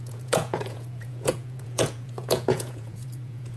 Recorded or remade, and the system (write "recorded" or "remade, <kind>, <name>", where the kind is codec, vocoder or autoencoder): remade, vocoder, Vocos